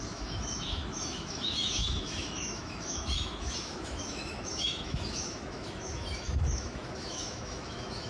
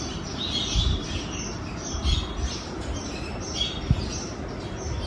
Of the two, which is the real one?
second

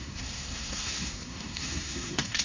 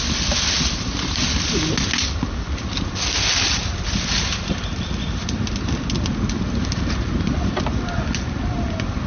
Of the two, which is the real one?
second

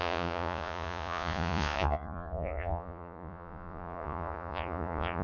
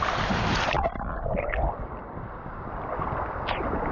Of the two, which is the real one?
second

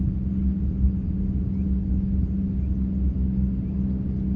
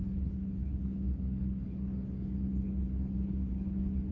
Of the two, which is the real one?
first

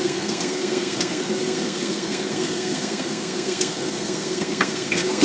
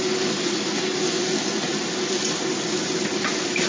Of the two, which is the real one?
second